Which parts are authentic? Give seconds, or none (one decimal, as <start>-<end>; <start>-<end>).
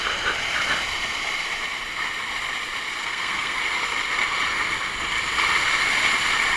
0.0-3.0; 3.6-6.6